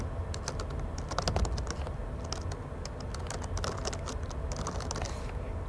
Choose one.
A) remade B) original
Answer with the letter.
B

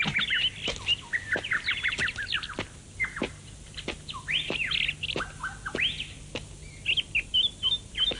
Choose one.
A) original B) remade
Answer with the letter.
A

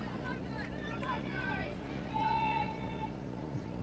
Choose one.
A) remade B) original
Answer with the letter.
A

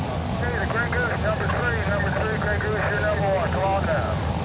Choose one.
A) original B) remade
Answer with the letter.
A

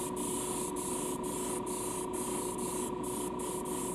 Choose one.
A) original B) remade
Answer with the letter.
A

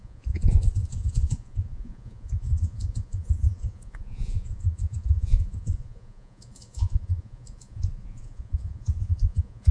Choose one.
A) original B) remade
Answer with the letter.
B